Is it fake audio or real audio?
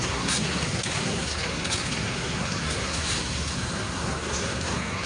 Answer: fake